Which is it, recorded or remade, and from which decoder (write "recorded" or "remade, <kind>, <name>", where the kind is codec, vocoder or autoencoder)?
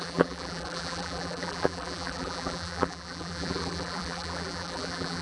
remade, vocoder, BigVGAN v2